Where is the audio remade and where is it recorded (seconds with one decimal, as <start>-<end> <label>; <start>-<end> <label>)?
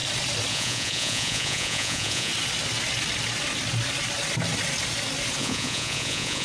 0.0-0.5 recorded; 0.5-2.3 remade; 2.3-5.4 recorded; 5.4-6.4 remade